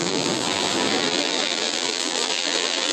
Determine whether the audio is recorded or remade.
remade